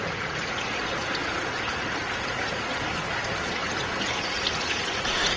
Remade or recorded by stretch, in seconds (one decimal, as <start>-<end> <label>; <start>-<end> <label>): 0.0-5.4 remade